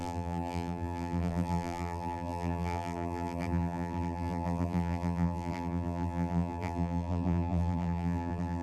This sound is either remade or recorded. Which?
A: remade